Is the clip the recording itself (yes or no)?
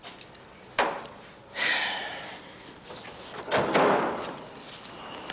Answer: yes